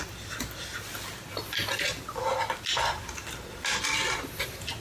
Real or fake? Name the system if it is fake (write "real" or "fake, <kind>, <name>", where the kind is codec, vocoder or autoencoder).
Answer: real